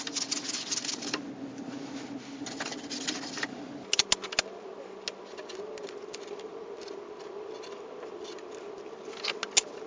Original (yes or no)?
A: yes